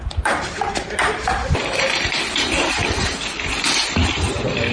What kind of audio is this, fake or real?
real